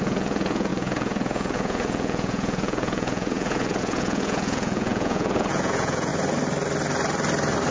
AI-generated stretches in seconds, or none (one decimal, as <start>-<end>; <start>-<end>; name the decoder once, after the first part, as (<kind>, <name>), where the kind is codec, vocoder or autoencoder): 0.0-6.1 (vocoder, Vocos)